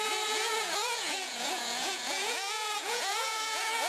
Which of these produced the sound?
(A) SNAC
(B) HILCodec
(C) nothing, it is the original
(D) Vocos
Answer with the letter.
D